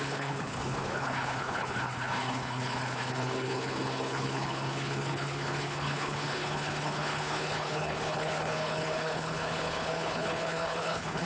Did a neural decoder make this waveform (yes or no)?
yes